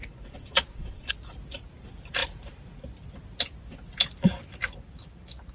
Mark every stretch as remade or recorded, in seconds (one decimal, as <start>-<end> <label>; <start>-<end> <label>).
0.0-1.1 remade; 1.1-5.5 recorded